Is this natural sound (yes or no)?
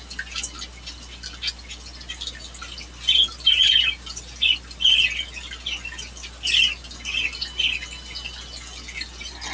yes